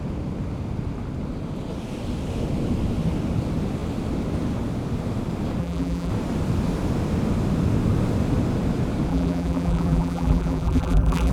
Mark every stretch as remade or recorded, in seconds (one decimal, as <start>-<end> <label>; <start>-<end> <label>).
0.0-5.6 recorded; 5.6-6.1 remade; 6.1-9.1 recorded; 9.1-11.3 remade